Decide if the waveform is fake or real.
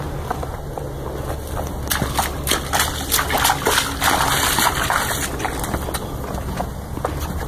real